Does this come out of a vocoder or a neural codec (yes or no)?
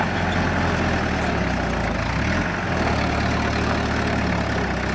no